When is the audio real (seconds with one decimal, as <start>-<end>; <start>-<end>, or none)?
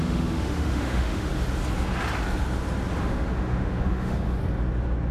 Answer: 1.3-3.0; 4.4-5.1